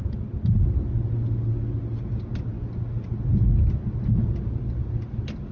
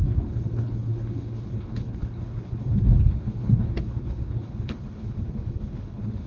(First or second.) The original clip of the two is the first